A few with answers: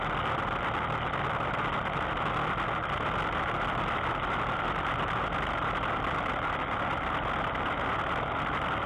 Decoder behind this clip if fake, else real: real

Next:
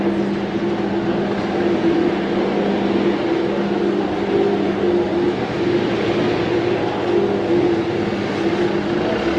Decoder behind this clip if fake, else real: real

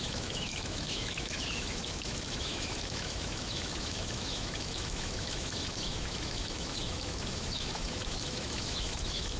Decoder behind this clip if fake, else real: fake, autoencoder, DAC-VAE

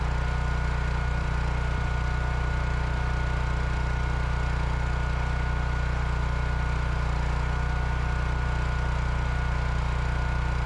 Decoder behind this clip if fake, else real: real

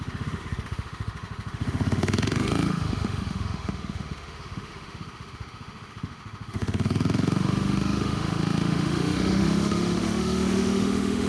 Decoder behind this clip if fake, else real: fake, autoencoder, DAC-VAE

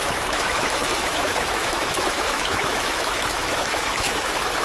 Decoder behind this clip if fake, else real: fake, autoencoder, DAC-VAE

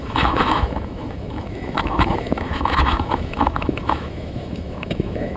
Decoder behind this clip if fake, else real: fake, autoencoder, DAC-VAE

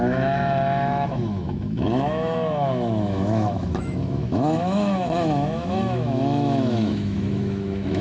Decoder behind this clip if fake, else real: fake, autoencoder, DAC-VAE